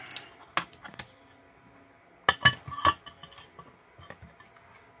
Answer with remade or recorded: recorded